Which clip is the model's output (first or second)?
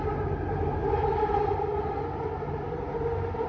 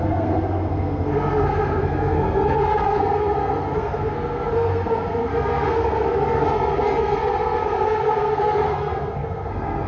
second